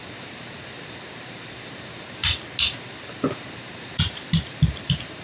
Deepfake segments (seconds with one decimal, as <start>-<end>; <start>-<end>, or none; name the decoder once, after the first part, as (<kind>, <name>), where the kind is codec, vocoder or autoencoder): 0.0-2.2 (vocoder, BigVGAN v2); 2.8-5.2

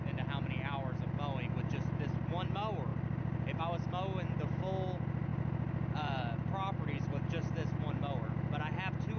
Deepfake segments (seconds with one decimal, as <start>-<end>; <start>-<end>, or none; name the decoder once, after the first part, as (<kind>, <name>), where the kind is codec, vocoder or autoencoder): 2.9-3.6 (vocoder, BigVGAN v2); 5.3-6.5

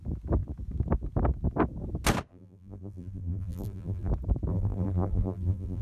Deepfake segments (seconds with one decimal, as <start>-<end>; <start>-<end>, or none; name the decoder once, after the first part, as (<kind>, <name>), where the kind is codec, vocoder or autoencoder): 2.3-4.1 (vocoder, BigVGAN v2); 4.5-5.8

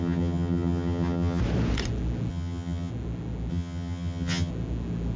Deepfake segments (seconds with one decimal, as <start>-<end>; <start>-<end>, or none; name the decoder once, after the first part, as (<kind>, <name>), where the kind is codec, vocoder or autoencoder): 0.0-1.4 (vocoder, HiFi-GAN); 2.3-2.9; 3.5-4.5

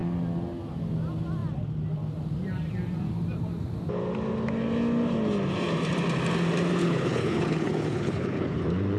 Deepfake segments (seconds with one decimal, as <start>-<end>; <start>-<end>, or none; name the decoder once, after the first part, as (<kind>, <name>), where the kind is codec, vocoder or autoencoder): 6.8-8.6 (codec, HILCodec)

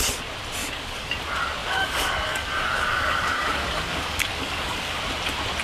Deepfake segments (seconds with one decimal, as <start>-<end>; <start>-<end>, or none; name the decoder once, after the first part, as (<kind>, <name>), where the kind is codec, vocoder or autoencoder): 0.6-1.2 (codec, DAC); 1.6-5.0